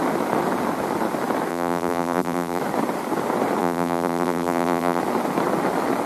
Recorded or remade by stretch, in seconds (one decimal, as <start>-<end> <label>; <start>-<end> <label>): 0.0-1.5 recorded; 1.5-2.6 remade; 2.6-3.6 recorded; 3.6-5.0 remade; 5.0-6.1 recorded